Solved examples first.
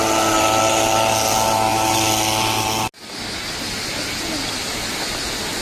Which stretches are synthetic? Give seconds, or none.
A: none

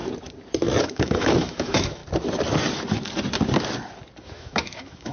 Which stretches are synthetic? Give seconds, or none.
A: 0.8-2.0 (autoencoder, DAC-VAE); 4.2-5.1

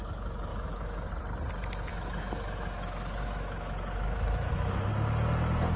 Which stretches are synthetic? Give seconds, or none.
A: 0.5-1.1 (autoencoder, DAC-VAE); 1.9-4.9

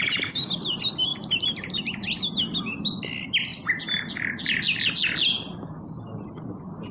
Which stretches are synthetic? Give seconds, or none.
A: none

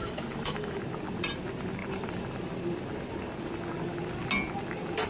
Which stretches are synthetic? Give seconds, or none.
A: 0.0-0.8 (autoencoder, DAC-VAE)

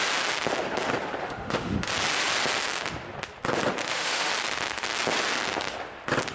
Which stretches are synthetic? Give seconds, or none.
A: 1.2-1.9 (autoencoder, DAC-VAE); 3.8-4.3